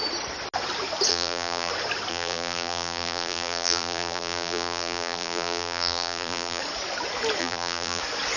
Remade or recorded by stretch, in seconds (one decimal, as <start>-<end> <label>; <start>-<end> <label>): 0.0-1.1 recorded; 1.1-1.7 remade; 1.7-2.1 recorded; 2.1-6.6 remade; 6.6-7.4 recorded; 7.4-8.0 remade; 8.0-8.4 recorded

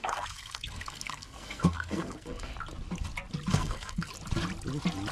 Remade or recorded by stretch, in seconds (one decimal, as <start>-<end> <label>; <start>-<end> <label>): 0.0-2.5 remade; 2.5-3.5 recorded; 3.5-4.1 remade; 4.1-5.1 recorded

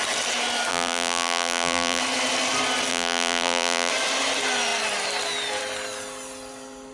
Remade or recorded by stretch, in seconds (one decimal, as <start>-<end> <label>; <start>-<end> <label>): 0.0-0.7 recorded; 0.7-2.0 remade; 2.0-2.9 recorded; 2.9-3.9 remade; 3.9-6.9 recorded

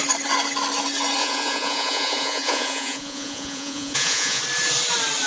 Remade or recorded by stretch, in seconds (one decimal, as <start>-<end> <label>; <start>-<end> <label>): 0.0-1.2 recorded; 1.2-4.4 remade; 4.4-5.3 recorded